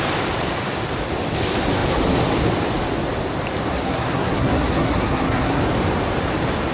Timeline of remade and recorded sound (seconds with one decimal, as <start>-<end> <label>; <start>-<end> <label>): 0.0-3.7 recorded; 3.7-5.6 remade; 5.6-6.7 recorded